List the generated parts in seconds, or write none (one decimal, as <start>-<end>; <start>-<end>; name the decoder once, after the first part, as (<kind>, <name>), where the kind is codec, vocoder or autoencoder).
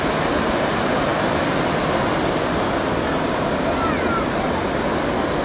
none